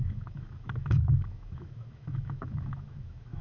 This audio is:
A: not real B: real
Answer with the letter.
A